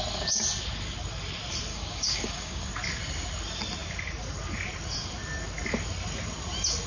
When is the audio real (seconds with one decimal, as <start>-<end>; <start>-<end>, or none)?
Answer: 0.0-1.7; 2.7-6.9